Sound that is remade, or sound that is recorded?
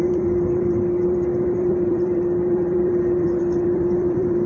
remade